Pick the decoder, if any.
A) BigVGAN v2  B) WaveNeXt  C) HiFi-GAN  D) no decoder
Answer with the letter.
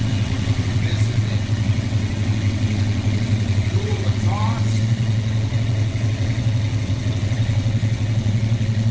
B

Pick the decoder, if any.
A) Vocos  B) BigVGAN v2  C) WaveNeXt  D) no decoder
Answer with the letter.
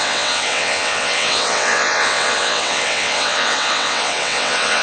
C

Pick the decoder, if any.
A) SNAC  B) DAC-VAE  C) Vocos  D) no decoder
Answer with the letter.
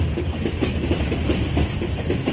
D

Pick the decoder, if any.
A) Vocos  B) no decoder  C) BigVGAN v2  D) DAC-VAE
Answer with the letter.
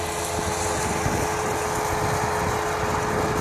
B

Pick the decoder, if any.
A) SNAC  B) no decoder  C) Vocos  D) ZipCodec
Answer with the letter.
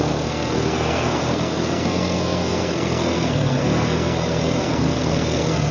A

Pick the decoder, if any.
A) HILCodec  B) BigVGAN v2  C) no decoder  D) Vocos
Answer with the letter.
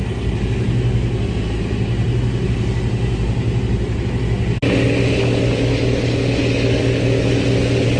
C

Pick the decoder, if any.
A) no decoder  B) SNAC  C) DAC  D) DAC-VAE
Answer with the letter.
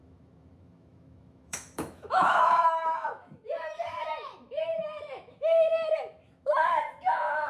D